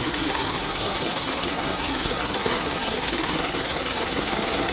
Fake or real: fake